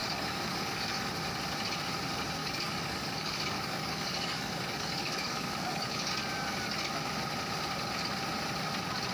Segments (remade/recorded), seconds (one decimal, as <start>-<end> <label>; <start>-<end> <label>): 0.0-1.1 remade; 1.1-2.4 recorded; 2.4-6.1 remade; 6.1-9.1 recorded